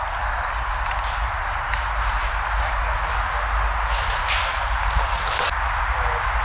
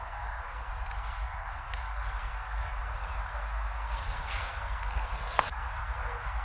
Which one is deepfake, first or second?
second